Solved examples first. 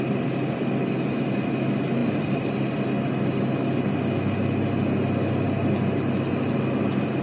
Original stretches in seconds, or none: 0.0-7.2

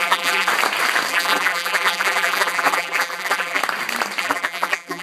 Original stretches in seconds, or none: 0.5-1.1; 3.6-4.2

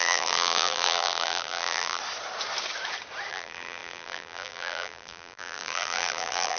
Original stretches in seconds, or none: 2.0-3.3